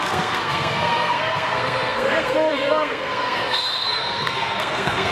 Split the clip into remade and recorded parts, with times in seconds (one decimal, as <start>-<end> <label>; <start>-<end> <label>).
0.0-5.1 remade